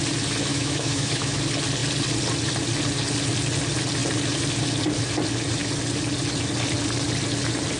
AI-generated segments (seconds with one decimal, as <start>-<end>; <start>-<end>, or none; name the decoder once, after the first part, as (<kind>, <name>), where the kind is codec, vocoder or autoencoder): 0.5-1.4 (autoencoder, DAC-VAE)